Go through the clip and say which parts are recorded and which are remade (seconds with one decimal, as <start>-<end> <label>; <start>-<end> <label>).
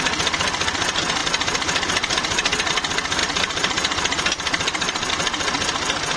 0.0-3.2 recorded; 3.2-5.1 remade; 5.1-6.2 recorded